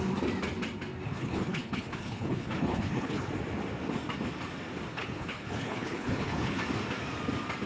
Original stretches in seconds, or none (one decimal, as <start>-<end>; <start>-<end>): 0.0-1.1; 3.3-4.9; 6.6-7.7